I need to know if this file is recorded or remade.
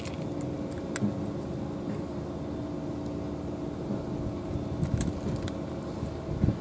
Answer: recorded